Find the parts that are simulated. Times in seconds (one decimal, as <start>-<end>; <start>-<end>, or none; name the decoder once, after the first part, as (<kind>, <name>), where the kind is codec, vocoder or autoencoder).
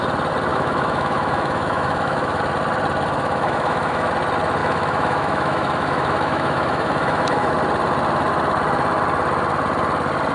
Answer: 0.5-2.4 (autoencoder, DAC-VAE); 3.2-4.1; 4.6-7.5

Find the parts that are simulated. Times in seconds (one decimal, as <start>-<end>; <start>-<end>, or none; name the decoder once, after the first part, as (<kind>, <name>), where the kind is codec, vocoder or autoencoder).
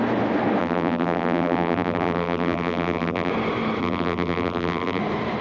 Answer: 0.6-3.3 (vocoder, BigVGAN v2); 3.8-5.0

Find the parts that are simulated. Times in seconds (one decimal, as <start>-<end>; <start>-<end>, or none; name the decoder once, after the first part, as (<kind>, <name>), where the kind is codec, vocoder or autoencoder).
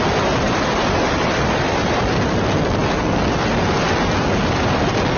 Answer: none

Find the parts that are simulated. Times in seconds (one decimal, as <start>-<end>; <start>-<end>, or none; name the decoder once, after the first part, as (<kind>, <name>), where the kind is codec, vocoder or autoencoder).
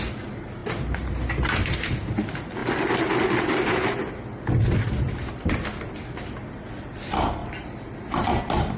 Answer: none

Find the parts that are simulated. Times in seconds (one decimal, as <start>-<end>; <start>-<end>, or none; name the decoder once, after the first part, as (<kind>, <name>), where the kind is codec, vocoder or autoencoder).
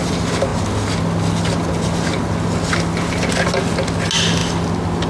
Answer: none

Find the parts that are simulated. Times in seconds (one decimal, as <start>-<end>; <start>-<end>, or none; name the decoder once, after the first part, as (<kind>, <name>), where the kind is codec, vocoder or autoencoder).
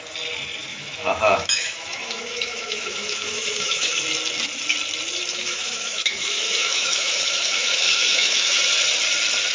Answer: 0.7-4.0 (autoencoder, DAC-VAE); 5.3-8.6